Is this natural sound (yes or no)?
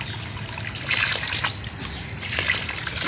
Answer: yes